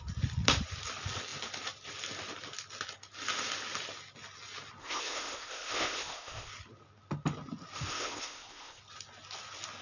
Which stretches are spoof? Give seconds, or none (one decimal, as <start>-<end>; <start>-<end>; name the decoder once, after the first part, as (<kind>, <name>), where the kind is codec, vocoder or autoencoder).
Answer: 4.8-6.5 (codec, ZipCodec); 7.9-8.8